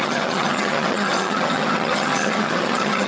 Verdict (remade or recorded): remade